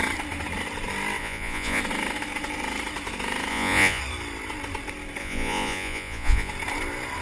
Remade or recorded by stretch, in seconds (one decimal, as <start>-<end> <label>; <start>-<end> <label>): 0.0-1.2 recorded; 1.2-1.8 remade; 1.8-3.5 recorded; 3.5-4.0 remade; 4.0-5.2 recorded; 5.2-6.5 remade; 6.5-7.2 recorded